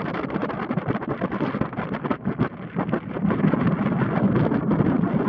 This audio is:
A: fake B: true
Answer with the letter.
B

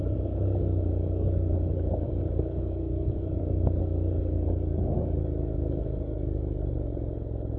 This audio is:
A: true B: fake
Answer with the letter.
B